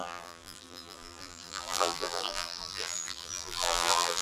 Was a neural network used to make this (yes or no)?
yes